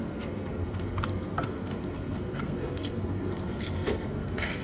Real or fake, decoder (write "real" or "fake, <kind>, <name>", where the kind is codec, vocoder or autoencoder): fake, codec, SNAC